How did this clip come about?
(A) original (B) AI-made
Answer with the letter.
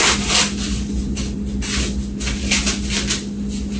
A